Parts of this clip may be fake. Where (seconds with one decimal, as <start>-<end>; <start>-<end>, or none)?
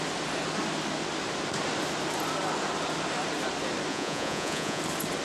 3.9-4.8